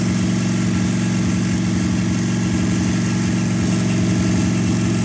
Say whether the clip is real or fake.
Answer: real